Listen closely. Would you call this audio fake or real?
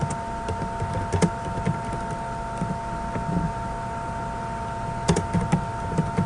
real